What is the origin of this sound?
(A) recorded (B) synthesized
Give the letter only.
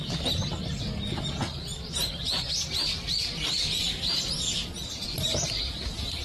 A